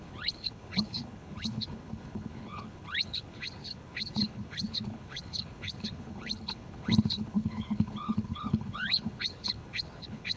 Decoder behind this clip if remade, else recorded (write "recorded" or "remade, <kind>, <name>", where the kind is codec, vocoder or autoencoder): remade, codec, HILCodec